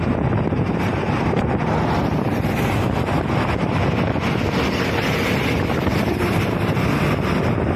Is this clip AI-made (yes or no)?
no